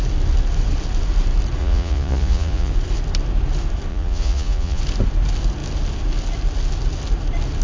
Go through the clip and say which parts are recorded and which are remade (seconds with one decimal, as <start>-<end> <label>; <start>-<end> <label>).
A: 0.0-1.6 recorded; 1.6-2.7 remade; 2.7-3.9 recorded; 3.9-4.8 remade; 4.8-7.6 recorded